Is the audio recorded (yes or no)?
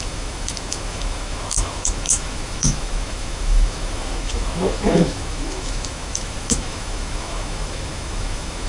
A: no